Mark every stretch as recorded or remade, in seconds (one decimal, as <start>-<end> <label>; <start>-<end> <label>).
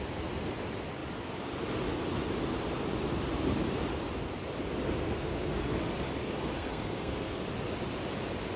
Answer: 0.0-5.0 recorded; 5.0-5.8 remade; 5.8-6.2 recorded; 6.2-7.5 remade; 7.5-8.6 recorded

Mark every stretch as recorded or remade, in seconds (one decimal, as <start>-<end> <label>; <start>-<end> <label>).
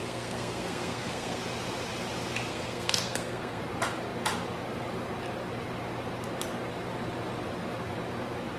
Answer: 0.0-1.4 remade; 1.4-2.5 recorded; 2.5-3.6 remade; 3.6-8.6 recorded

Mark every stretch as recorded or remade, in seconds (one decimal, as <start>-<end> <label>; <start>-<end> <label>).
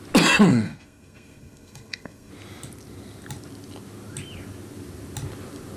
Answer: 0.0-0.5 recorded; 0.5-2.3 remade; 2.3-5.8 recorded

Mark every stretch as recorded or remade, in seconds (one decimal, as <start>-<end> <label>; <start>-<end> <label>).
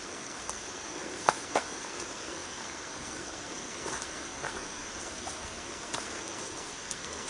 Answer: 0.0-7.3 remade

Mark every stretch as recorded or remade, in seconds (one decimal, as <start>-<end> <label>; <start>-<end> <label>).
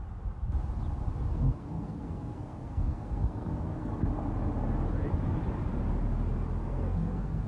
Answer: 0.0-1.3 recorded; 1.3-3.9 remade; 3.9-6.6 recorded; 6.6-7.5 remade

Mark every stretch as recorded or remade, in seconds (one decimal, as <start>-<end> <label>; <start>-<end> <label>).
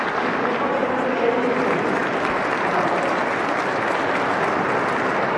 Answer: 0.0-5.4 recorded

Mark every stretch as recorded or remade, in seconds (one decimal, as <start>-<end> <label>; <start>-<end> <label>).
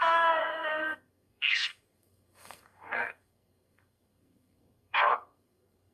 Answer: 0.0-5.9 remade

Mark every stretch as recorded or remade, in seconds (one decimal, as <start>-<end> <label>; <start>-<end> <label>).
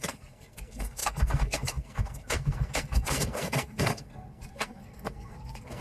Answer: 0.0-5.8 remade